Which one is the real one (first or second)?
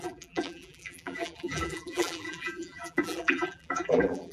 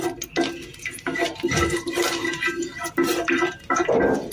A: second